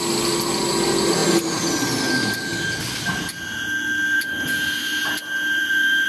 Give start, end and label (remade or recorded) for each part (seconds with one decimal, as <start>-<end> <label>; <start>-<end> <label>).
0.0-6.1 recorded